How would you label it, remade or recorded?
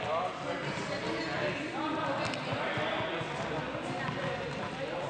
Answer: recorded